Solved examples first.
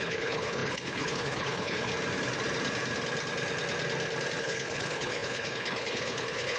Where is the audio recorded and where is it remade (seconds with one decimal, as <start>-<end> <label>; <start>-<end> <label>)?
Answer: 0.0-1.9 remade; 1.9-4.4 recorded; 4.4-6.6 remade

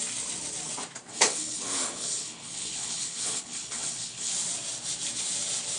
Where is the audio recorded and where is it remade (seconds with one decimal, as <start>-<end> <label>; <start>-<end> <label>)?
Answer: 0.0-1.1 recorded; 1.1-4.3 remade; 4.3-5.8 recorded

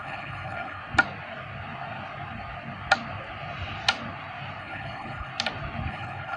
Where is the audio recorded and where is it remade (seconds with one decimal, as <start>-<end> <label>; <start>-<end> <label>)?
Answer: 0.0-0.8 remade; 0.8-4.6 recorded; 4.6-5.3 remade; 5.3-5.9 recorded; 5.9-6.4 remade